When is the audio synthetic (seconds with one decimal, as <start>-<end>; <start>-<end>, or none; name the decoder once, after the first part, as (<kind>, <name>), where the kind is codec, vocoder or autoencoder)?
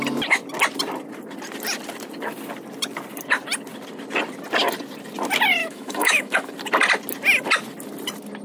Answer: 5.6-6.5 (autoencoder, DAC-VAE)